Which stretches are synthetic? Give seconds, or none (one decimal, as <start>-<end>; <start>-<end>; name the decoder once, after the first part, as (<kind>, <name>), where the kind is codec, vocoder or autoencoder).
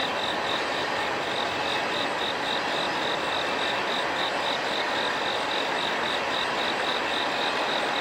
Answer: none